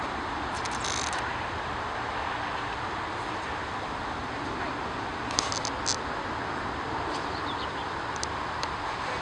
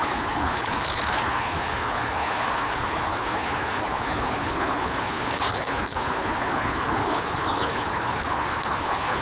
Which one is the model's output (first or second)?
second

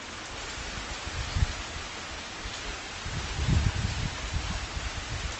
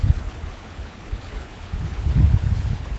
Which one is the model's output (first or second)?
second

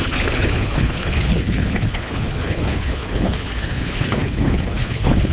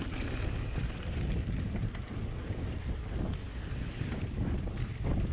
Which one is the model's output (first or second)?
first